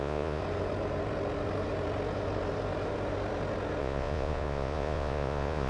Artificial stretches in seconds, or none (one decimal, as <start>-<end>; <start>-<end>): 0.0-0.4; 3.8-5.7